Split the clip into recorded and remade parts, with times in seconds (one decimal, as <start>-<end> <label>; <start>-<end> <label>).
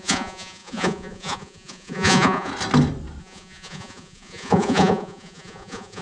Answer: 0.0-2.5 remade; 2.5-3.2 recorded; 3.2-6.0 remade